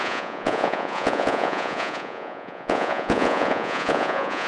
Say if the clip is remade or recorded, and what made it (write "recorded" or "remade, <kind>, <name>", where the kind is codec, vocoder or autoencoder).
remade, vocoder, Vocos